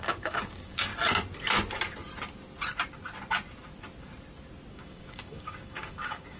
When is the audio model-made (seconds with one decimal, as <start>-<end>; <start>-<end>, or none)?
0.0-0.9; 4.7-6.4